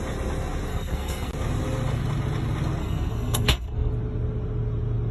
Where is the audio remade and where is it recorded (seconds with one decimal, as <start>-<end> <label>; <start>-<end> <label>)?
0.0-0.7 recorded; 0.7-1.3 remade; 1.3-2.8 recorded; 2.8-3.9 remade; 3.9-5.1 recorded